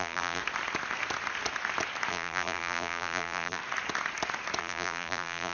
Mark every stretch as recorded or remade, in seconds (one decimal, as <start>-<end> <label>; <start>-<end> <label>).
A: 0.0-0.4 remade; 0.4-2.1 recorded; 2.1-3.6 remade; 3.6-4.6 recorded; 4.6-5.5 remade